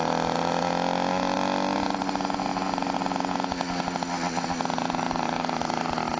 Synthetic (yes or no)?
no